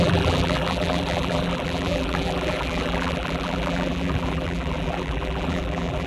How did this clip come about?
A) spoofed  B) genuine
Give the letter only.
A